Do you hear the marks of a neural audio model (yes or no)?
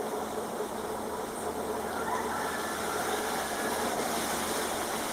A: no